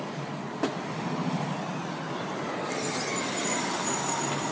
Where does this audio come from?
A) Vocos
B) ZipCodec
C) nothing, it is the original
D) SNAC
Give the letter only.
C